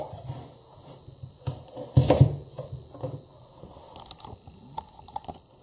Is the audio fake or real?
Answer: real